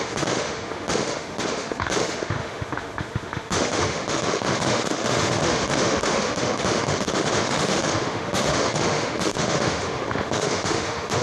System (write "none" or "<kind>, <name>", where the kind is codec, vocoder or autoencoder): autoencoder, DAC-VAE